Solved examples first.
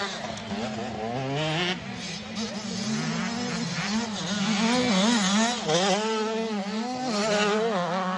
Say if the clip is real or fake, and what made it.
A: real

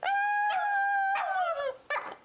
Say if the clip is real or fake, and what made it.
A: fake, vocoder, BigVGAN v2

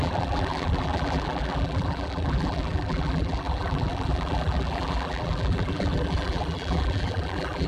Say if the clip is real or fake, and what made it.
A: fake, vocoder, BigVGAN v2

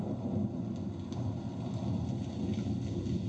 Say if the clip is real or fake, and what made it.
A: real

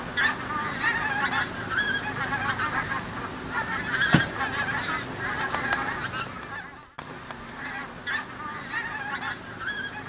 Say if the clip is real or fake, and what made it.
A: real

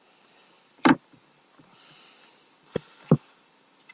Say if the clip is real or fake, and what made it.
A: fake, vocoder, BigVGAN v2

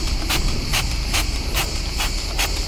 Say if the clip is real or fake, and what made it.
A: fake, vocoder, BigVGAN v2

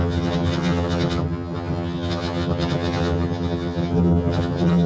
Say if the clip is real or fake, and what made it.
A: fake, vocoder, HiFi-GAN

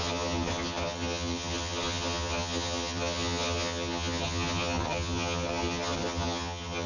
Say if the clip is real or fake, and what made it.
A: fake, vocoder, HiFi-GAN